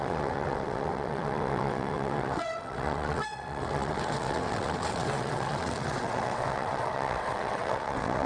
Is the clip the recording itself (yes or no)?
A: no